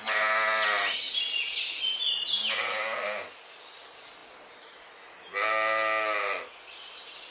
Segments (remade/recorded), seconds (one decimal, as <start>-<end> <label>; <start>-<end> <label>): 0.0-7.3 recorded